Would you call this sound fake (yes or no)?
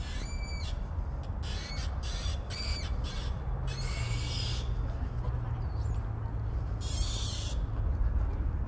no